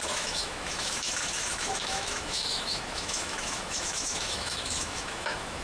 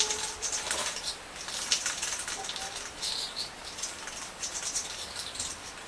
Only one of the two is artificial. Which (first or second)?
first